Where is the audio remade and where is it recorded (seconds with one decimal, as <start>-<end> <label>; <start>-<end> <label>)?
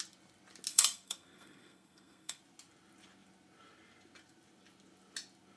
0.0-0.7 recorded; 0.7-2.4 remade; 2.4-5.6 recorded